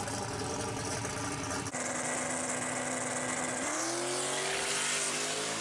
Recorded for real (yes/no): yes